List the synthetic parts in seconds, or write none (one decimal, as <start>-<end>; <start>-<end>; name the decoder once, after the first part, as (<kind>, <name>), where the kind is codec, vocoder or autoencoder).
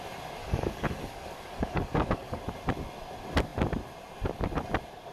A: 0.4-2.4 (codec, DAC)